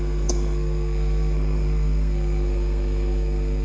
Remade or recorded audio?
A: remade